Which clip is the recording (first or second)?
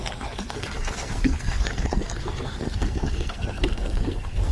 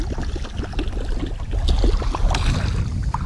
second